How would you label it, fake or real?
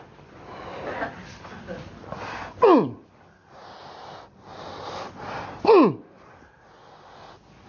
real